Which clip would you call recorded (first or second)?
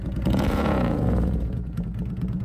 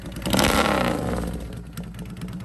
second